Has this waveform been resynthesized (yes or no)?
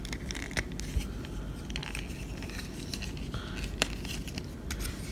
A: no